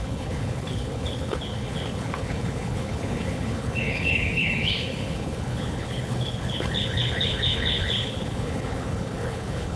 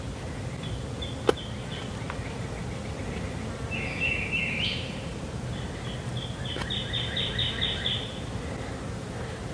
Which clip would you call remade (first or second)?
first